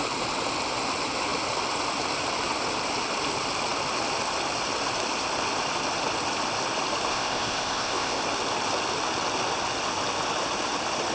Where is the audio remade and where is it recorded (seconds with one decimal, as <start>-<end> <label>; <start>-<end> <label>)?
0.0-7.1 recorded; 7.1-8.2 remade; 8.2-11.1 recorded